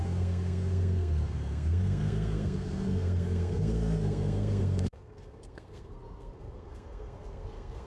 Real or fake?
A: fake